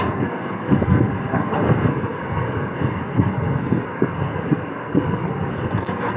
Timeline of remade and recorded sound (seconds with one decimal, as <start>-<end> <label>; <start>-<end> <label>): 0.0-6.2 remade